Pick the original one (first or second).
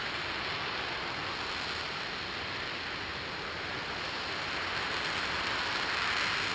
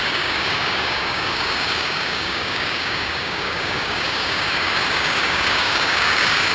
first